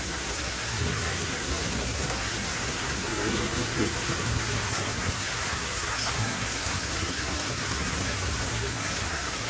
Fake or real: fake